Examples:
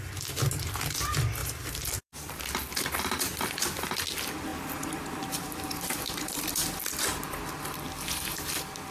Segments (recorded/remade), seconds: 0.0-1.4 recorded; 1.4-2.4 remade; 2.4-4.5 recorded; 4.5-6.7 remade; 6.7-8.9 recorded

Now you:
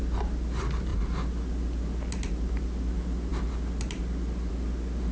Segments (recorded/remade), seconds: 0.0-5.1 recorded

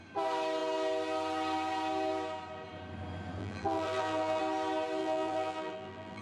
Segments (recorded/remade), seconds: 0.0-3.4 recorded; 3.4-4.4 remade; 4.4-5.0 recorded; 5.0-6.2 remade

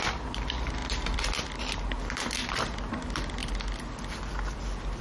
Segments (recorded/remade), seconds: 0.0-5.0 remade

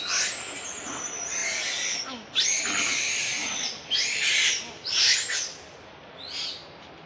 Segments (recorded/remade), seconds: 0.0-3.4 recorded; 3.4-4.5 remade; 4.5-7.1 recorded